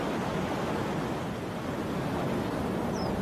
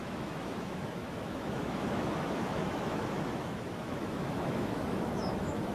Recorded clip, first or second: first